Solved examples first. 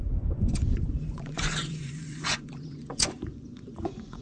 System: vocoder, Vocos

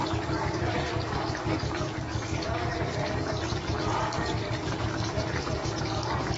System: codec, DAC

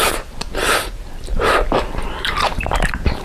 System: vocoder, BigVGAN v2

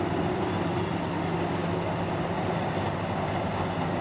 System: none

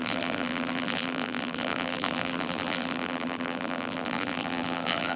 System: vocoder, BigVGAN v2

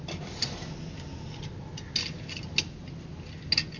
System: none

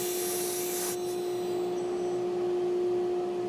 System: none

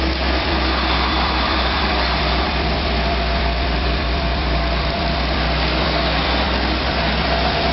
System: vocoder, BigVGAN v2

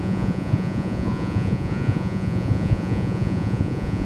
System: vocoder, Vocos